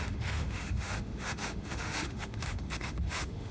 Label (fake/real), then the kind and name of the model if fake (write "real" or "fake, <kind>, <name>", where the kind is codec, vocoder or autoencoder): fake, autoencoder, DAC-VAE